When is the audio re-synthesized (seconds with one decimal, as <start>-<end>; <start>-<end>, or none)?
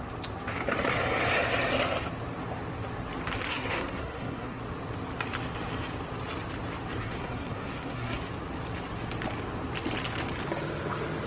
3.5-4.6; 7.0-8.2